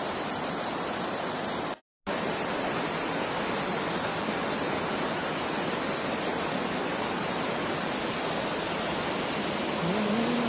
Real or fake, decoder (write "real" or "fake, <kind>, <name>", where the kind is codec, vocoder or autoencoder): real